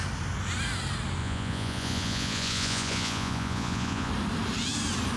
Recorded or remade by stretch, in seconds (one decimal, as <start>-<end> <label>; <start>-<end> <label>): 0.0-1.2 recorded; 1.2-4.1 remade; 4.1-5.2 recorded